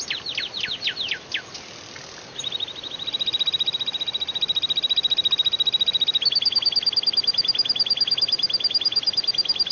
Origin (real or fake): real